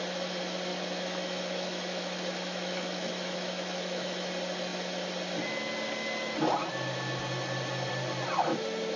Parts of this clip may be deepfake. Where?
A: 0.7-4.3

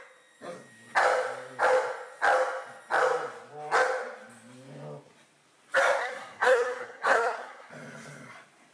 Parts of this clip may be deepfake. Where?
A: 6.0-7.7

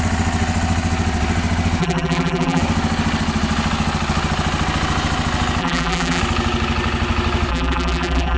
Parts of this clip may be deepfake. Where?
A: 1.8-2.6; 5.6-6.2; 7.5-8.4

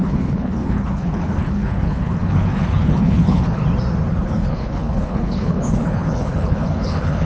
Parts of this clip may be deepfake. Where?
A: 0.0-3.6; 4.1-7.3

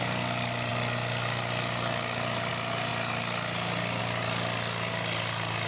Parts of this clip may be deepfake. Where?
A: none

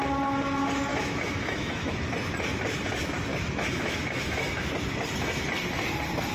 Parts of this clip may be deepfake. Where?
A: 0.9-2.1; 3.3-4.5

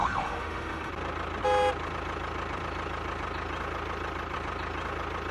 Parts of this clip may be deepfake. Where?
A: 0.0-0.9

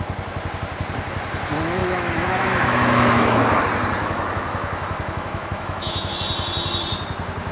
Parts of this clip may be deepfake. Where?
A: 1.8-3.6; 4.0-6.1